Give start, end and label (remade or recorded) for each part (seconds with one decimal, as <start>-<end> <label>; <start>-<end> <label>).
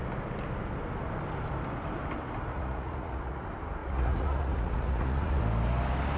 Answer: 0.0-2.5 recorded; 2.5-3.4 remade; 3.4-3.8 recorded; 3.8-5.4 remade; 5.4-6.2 recorded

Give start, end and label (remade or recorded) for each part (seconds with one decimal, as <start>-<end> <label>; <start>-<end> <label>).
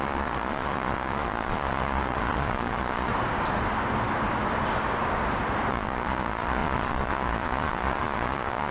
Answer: 0.0-3.1 remade; 3.1-5.7 recorded; 5.7-8.7 remade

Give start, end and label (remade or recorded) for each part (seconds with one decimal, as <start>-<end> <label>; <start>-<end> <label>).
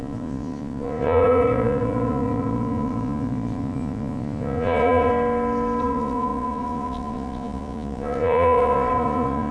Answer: 0.0-5.1 remade; 5.1-5.8 recorded; 5.8-9.5 remade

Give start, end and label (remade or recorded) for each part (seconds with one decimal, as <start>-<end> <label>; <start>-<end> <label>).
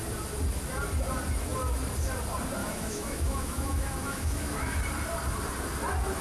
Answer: 0.0-2.6 recorded; 2.6-4.8 remade; 4.8-6.2 recorded